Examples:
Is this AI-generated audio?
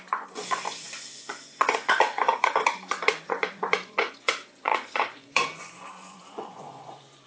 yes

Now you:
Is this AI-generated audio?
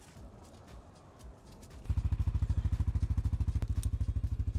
no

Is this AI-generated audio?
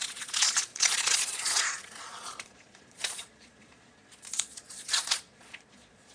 yes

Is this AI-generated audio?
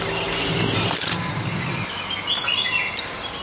no